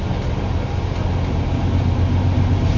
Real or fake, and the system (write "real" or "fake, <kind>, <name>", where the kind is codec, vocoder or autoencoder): real